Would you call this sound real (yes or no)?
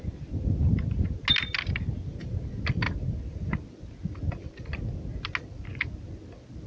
yes